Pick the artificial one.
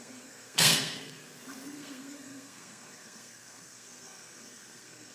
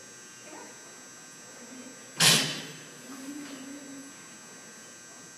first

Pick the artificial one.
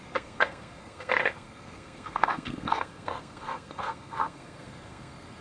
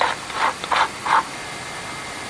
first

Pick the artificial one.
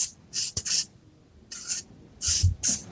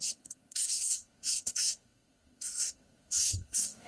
second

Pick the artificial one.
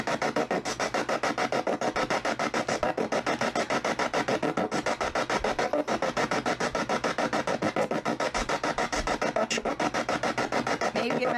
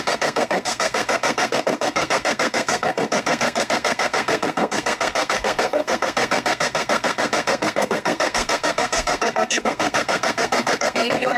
second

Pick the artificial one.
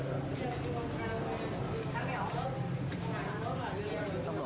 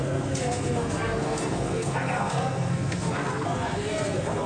second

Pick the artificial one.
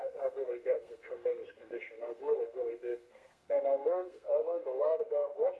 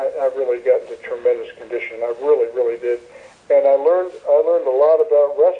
first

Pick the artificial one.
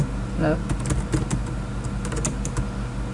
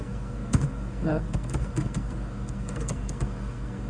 second